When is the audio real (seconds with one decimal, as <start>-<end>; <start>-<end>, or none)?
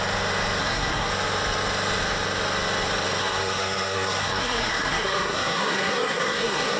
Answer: 0.0-0.6; 1.1-3.2